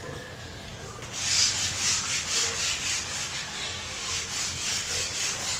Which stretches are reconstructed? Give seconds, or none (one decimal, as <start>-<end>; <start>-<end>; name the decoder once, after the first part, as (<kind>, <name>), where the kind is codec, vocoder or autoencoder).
0.0-5.6 (codec, DAC)